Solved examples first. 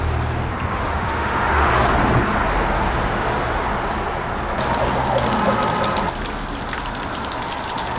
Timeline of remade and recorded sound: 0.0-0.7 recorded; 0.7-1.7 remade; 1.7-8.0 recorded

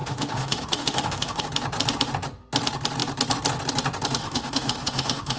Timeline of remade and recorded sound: 0.0-1.4 remade; 1.4-4.2 recorded; 4.2-5.4 remade